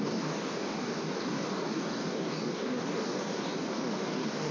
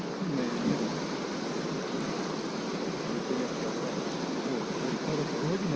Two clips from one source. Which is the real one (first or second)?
second